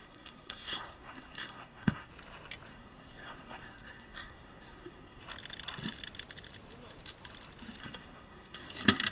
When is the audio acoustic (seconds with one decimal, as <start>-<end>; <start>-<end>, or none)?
2.1-2.7; 5.2-7.8; 8.7-9.1